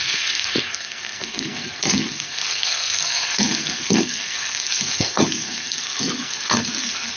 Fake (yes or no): yes